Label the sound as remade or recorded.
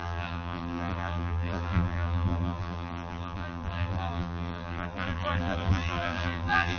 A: remade